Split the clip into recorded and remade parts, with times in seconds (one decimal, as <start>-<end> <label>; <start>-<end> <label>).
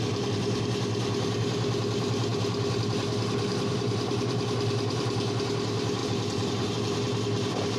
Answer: 0.0-6.0 recorded; 6.0-6.7 remade; 6.7-7.8 recorded